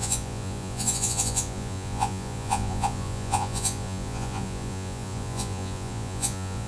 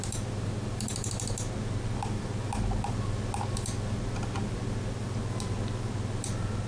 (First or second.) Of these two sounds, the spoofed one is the first